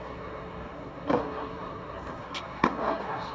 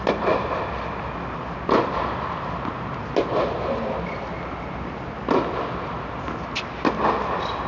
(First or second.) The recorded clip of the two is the second